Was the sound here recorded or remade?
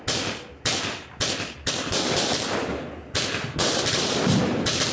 recorded